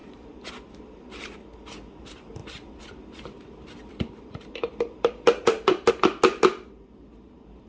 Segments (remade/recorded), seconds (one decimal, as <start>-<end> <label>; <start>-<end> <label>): 0.0-0.5 remade; 0.5-2.4 recorded; 2.4-5.9 remade; 5.9-7.7 recorded